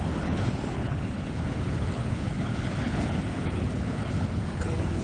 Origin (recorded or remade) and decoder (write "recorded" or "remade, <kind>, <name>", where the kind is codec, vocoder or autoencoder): remade, codec, HILCodec